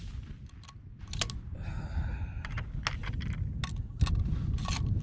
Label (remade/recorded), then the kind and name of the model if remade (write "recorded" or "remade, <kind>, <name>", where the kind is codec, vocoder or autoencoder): recorded